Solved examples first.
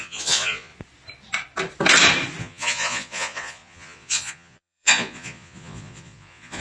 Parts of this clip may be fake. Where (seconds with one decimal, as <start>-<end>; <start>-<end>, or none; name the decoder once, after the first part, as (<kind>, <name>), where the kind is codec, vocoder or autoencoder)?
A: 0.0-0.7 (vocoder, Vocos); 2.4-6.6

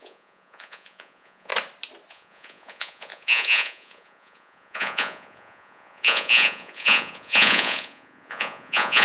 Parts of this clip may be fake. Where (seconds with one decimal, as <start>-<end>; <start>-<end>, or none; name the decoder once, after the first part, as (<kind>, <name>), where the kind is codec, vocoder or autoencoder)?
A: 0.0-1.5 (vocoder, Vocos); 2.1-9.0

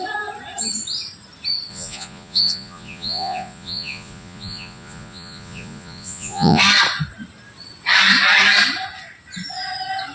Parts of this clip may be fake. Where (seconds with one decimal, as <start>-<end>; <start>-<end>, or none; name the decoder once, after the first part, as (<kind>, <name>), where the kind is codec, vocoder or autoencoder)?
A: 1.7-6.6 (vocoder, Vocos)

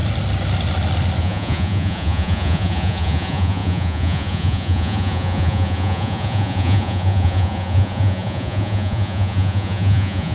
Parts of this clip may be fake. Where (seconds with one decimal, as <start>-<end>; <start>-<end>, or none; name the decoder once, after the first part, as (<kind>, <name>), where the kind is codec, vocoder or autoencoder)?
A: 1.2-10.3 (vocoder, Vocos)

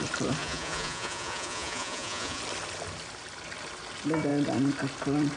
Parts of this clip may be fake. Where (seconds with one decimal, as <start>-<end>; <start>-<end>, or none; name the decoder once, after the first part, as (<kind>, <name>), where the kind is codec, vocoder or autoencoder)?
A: 0.4-2.4 (vocoder, Vocos)

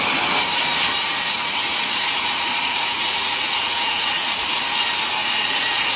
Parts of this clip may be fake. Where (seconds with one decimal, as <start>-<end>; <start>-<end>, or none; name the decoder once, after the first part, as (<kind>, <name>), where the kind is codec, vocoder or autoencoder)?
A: 1.0-4.6 (vocoder, Vocos); 5.2-6.0